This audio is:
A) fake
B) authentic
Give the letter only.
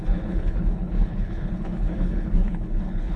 A